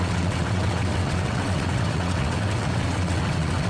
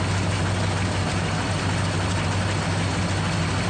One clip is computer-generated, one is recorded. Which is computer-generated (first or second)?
first